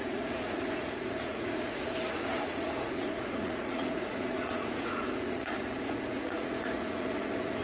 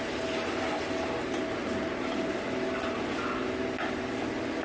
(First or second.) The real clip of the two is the second